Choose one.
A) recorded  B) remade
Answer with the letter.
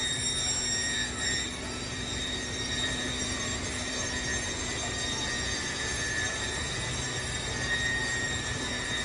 B